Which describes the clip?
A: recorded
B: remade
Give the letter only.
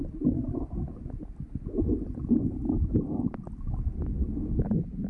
A